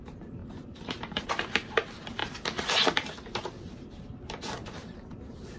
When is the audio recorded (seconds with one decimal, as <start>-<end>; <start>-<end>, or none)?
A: 0.0-0.4; 1.2-4.8